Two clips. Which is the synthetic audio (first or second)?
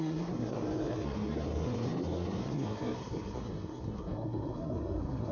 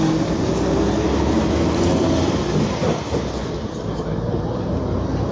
first